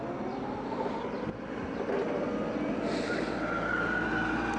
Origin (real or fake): real